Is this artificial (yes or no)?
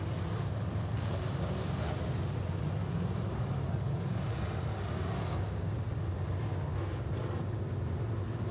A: no